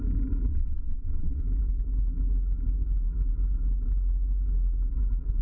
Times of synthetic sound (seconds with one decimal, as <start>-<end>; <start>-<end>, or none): 0.5-1.4